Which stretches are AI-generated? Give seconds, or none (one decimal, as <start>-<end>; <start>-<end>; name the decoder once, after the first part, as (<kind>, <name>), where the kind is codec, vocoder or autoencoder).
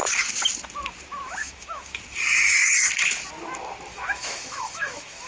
1.4-2.0 (autoencoder, DAC-VAE); 3.9-5.3